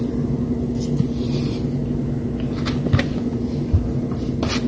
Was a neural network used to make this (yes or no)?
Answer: no